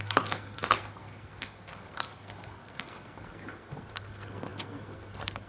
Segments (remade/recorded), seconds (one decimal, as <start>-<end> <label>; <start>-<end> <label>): 0.0-5.5 remade